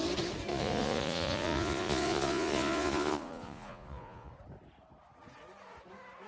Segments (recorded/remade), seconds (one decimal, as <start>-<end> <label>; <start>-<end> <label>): 0.0-0.5 recorded; 0.5-4.3 remade; 4.3-6.3 recorded